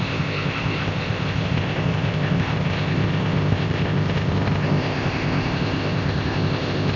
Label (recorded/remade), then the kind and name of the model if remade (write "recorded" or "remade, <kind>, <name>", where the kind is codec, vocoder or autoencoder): remade, codec, ZipCodec